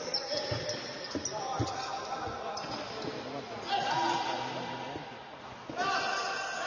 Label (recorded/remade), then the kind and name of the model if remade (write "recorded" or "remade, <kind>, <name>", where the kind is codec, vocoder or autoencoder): recorded